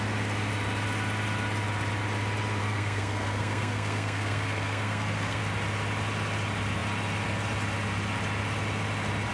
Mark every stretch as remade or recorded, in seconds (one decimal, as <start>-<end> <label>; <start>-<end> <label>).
0.0-2.6 recorded; 2.6-5.4 remade; 5.4-9.3 recorded